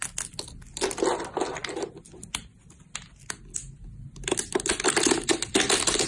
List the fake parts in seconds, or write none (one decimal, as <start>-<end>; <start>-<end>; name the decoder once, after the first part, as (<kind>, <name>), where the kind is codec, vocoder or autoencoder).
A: none